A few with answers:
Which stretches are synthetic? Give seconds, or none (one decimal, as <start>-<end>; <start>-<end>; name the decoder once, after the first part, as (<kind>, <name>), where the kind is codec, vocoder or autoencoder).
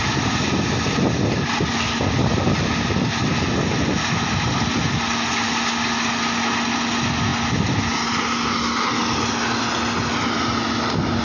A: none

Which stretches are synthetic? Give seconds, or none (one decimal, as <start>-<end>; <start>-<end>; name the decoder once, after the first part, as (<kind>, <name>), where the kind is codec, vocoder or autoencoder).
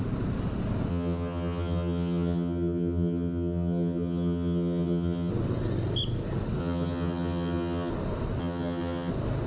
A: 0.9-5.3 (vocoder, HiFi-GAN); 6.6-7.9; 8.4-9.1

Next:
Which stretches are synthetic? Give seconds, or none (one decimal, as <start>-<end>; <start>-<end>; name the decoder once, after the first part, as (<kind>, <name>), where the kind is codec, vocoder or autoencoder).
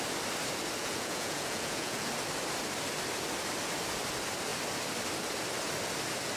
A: 0.8-2.1 (vocoder, Vocos)